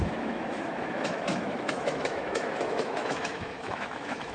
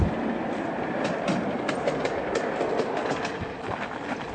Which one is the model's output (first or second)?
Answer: first